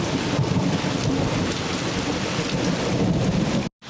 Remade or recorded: recorded